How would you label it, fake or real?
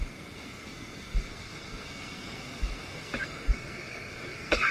fake